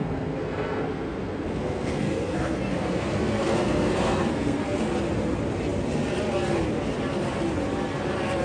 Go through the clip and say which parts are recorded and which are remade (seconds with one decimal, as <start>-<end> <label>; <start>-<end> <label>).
0.0-4.9 remade; 4.9-8.4 recorded